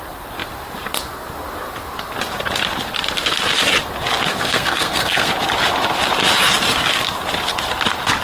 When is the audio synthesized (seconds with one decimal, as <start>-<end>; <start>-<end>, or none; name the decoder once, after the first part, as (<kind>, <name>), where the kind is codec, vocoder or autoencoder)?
4.3-5.3 (codec, SNAC)